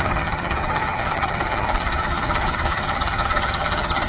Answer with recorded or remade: remade